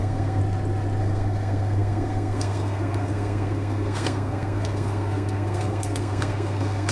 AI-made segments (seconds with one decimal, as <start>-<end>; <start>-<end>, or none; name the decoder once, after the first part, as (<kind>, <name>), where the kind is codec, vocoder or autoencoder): 0.0-0.4 (codec, SNAC); 1.0-6.9